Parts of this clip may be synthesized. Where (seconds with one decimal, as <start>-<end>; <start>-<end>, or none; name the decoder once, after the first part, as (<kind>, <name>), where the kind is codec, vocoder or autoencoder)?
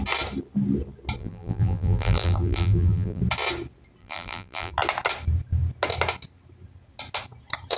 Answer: 1.2-3.2 (vocoder, BigVGAN v2); 4.0-4.7